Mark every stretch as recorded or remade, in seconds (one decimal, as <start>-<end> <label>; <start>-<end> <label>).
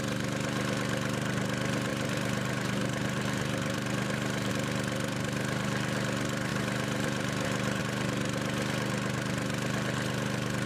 0.0-1.9 recorded; 1.9-4.5 remade; 4.5-6.5 recorded; 6.5-7.8 remade; 7.8-10.7 recorded